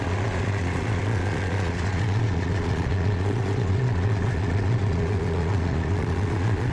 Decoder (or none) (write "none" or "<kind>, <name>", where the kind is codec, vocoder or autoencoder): vocoder, Vocos